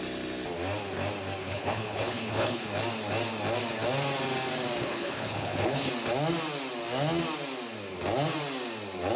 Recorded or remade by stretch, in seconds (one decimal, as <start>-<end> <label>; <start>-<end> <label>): 0.0-1.4 recorded; 1.4-2.7 remade; 2.7-4.8 recorded; 4.8-5.9 remade; 5.9-9.2 recorded